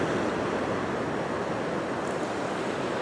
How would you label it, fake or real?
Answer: real